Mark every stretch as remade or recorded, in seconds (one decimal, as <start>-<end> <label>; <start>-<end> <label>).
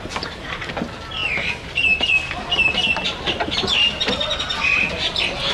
0.0-5.5 recorded